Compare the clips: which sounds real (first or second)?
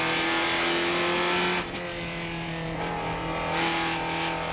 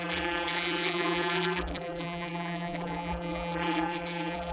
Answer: first